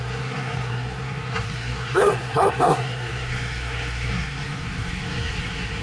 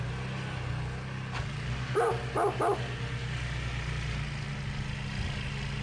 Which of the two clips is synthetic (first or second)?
first